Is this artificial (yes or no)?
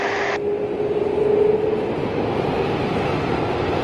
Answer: no